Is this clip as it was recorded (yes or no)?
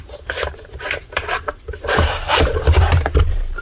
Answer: no